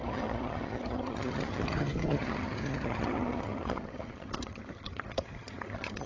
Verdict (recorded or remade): remade